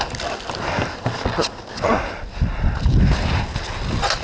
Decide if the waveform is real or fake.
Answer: real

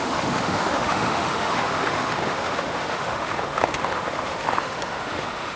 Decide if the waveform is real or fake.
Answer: fake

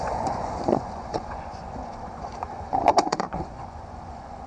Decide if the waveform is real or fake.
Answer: fake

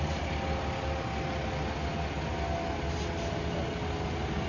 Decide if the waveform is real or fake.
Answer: real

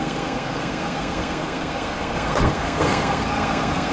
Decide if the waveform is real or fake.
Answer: fake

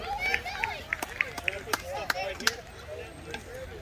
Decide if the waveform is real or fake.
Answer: real